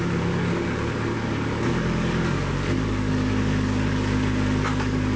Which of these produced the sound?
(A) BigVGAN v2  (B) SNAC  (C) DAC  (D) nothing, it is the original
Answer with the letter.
C